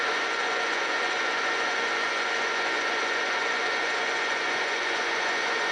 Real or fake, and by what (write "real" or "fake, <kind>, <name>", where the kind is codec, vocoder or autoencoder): fake, vocoder, Vocos